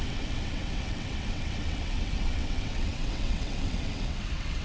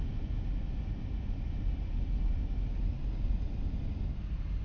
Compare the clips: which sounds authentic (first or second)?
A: second